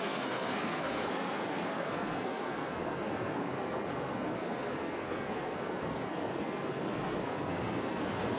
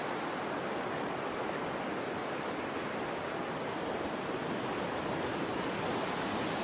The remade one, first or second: first